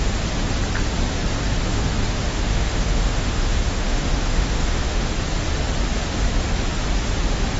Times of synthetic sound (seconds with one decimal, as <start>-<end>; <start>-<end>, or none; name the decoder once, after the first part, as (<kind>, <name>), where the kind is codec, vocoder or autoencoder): 1.7-5.1 (autoencoder, DAC-VAE)